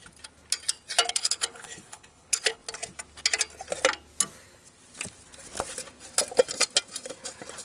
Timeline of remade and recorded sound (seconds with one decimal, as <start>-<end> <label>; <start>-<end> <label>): 0.0-1.1 recorded; 1.1-2.6 remade; 2.6-7.6 recorded